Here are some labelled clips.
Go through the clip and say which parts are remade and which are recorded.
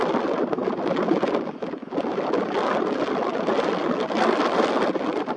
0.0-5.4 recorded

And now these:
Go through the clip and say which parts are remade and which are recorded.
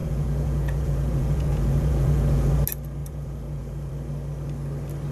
0.0-2.5 remade; 2.5-3.0 recorded; 3.0-3.9 remade; 3.9-5.1 recorded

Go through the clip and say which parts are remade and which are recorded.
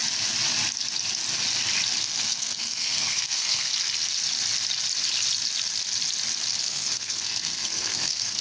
0.0-2.0 recorded; 2.0-3.7 remade; 3.7-6.6 recorded; 6.6-8.4 remade